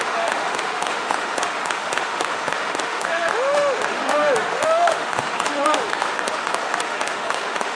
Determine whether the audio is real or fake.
fake